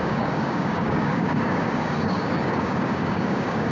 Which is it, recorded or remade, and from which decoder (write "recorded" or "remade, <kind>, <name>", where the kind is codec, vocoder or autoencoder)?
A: remade, codec, DAC